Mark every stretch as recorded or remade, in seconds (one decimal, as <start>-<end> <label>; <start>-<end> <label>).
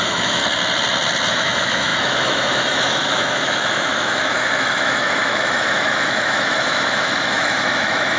0.0-0.4 remade; 0.4-1.3 recorded; 1.3-8.2 remade